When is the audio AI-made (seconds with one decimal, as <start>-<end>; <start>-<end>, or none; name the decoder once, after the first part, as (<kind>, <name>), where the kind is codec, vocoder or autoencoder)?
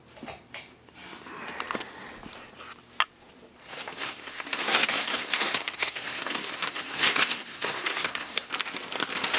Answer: 3.7-8.5 (codec, SNAC)